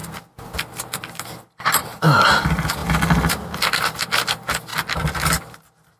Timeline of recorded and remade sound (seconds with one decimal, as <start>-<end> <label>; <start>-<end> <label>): 0.0-1.8 recorded; 1.8-2.4 remade; 2.4-6.0 recorded